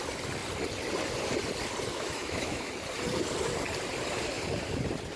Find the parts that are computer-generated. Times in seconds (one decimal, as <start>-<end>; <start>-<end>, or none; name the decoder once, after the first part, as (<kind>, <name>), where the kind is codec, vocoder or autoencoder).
1.9-2.7 (autoencoder, DAC-VAE)